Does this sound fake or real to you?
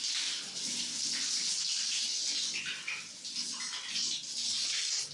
real